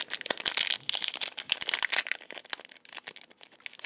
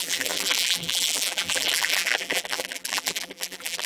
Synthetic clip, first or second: second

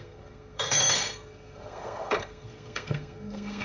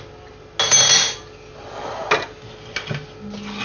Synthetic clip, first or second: first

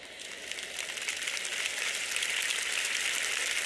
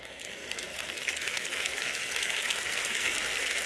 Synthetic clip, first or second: second